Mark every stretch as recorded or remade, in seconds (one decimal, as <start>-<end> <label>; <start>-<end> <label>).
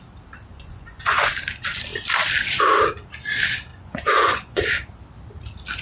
0.0-0.5 recorded; 0.5-1.3 remade; 1.3-3.7 recorded; 3.7-4.6 remade; 4.6-5.8 recorded